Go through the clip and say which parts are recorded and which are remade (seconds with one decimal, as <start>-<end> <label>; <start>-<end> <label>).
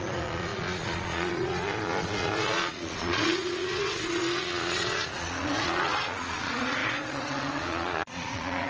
0.0-8.7 remade